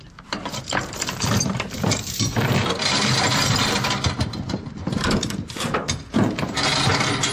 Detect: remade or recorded remade